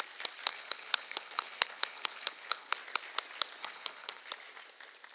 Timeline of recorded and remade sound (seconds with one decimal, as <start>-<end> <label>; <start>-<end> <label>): 0.0-0.5 recorded; 0.5-2.7 remade; 2.7-3.6 recorded; 3.6-4.2 remade; 4.2-5.1 recorded